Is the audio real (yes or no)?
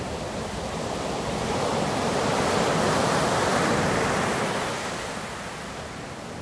yes